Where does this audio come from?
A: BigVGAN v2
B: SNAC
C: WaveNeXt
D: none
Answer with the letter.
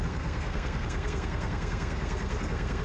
B